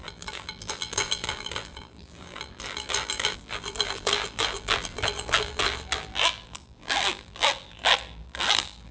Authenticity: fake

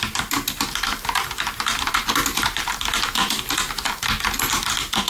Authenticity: fake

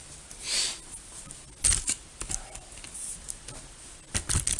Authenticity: real